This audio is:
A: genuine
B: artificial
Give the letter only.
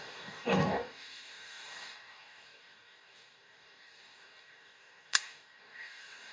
B